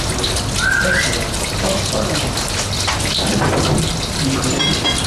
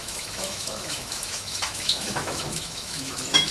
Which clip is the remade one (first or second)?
second